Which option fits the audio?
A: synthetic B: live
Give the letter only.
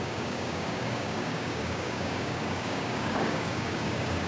A